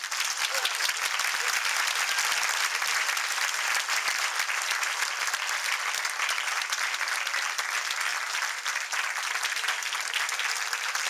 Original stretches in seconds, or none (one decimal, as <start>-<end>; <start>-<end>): 0.0-11.1